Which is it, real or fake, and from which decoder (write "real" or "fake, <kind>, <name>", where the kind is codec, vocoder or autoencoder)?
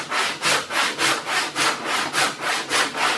real